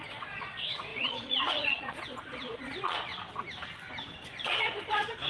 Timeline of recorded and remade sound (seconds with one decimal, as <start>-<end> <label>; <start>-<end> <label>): 0.0-3.1 remade; 3.1-4.3 recorded; 4.3-5.3 remade